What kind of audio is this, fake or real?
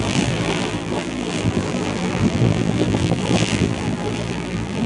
fake